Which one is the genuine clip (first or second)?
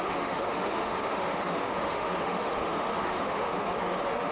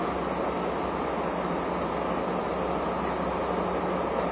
second